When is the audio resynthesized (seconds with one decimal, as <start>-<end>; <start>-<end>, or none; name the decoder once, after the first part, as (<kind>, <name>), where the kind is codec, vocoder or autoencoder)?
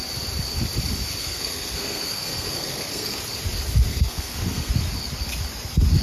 1.2-3.2 (codec, SNAC); 3.9-4.7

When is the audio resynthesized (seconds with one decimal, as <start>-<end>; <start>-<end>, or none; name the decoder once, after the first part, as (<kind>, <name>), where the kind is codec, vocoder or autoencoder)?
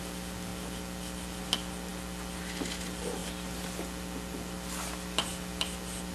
none